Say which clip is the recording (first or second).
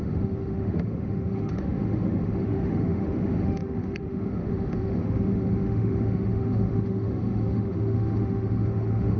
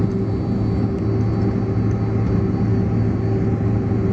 second